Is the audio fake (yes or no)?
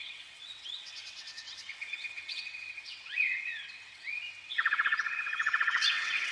yes